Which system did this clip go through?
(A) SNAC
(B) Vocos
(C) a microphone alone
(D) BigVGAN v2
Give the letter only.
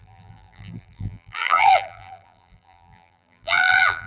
D